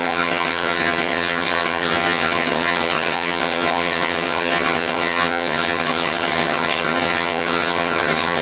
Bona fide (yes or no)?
no